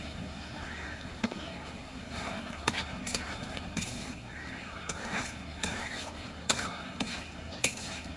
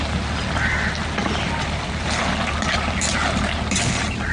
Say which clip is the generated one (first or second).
first